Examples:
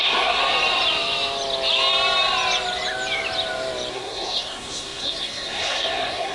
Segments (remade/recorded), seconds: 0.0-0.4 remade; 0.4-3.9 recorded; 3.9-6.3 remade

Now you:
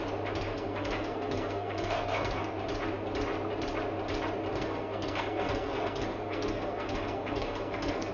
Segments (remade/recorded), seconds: 0.0-0.5 recorded; 0.5-2.5 remade; 2.5-4.5 recorded; 4.5-8.1 remade

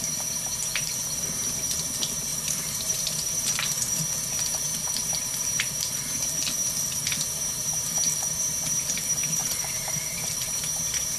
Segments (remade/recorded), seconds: 0.0-2.3 recorded; 2.3-4.0 remade; 4.0-9.4 recorded; 9.4-10.3 remade; 10.3-11.2 recorded

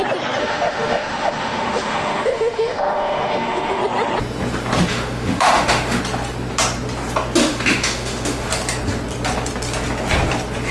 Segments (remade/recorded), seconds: 0.0-0.4 recorded; 0.4-3.8 remade; 3.8-4.9 recorded; 4.9-6.0 remade; 6.0-7.4 recorded; 7.4-8.5 remade; 8.5-10.7 recorded

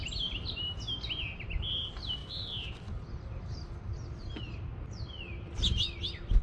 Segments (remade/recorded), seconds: 0.0-4.7 remade; 4.7-6.4 recorded

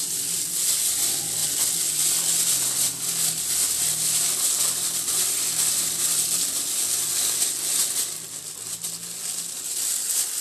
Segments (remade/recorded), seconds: 0.0-10.4 recorded

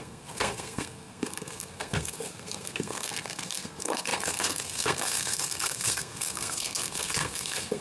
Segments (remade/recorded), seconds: 0.0-7.8 remade

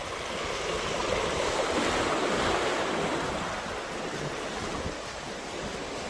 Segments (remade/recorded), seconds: 0.0-6.1 recorded